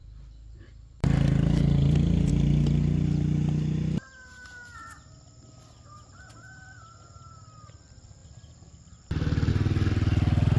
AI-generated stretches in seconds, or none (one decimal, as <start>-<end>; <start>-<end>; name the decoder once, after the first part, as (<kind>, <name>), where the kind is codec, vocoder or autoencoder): 0.0-2.3 (vocoder, BigVGAN v2); 8.2-9.5